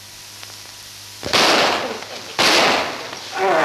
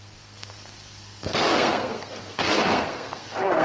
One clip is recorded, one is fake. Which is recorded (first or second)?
first